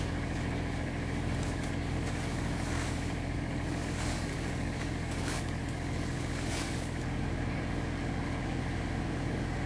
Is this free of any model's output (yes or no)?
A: no